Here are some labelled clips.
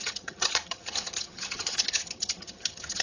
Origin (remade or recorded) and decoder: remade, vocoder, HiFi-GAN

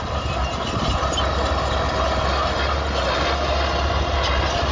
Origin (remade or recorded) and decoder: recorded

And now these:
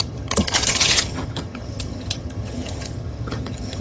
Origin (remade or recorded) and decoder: remade, vocoder, HiFi-GAN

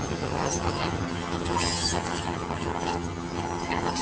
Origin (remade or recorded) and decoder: remade, vocoder, HiFi-GAN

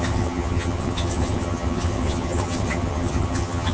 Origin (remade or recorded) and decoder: remade, vocoder, HiFi-GAN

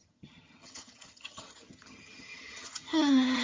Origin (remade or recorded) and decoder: remade, vocoder, HiFi-GAN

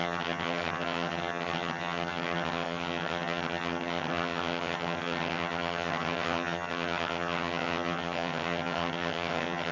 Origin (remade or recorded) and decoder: remade, vocoder, HiFi-GAN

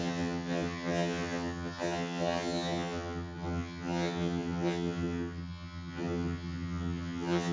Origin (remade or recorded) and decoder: remade, vocoder, HiFi-GAN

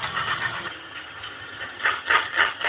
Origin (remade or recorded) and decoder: remade, vocoder, HiFi-GAN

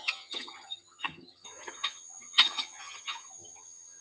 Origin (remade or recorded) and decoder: remade, vocoder, HiFi-GAN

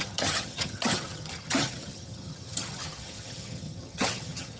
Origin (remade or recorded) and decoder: remade, vocoder, HiFi-GAN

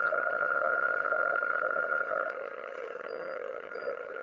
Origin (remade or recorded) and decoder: remade, vocoder, HiFi-GAN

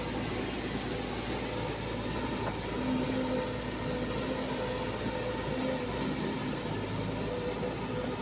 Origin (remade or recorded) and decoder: recorded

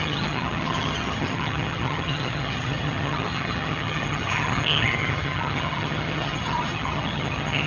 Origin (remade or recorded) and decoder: remade, vocoder, HiFi-GAN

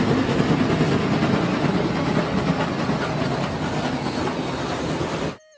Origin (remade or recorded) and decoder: recorded